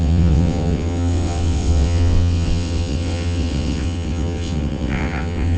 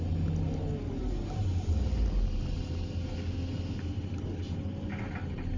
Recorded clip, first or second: second